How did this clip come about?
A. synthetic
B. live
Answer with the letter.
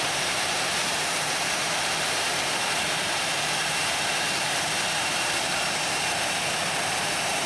A